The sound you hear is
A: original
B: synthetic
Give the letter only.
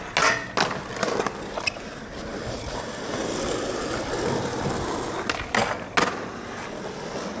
A